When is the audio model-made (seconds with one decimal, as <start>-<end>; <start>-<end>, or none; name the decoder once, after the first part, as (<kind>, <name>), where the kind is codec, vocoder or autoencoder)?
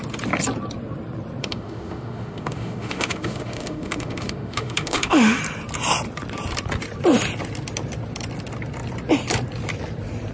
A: 1.4-5.4 (autoencoder, DAC-VAE)